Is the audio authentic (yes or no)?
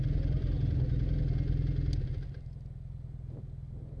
yes